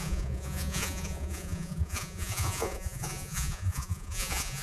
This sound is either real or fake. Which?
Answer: fake